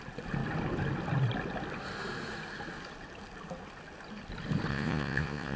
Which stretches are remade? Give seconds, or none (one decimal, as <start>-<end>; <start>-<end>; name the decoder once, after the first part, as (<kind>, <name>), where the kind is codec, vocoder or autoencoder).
4.7-5.6 (vocoder, Vocos)